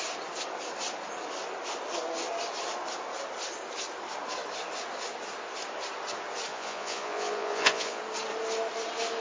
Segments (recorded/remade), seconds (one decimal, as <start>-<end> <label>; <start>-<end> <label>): 0.0-6.5 recorded; 6.5-8.0 remade; 8.0-9.2 recorded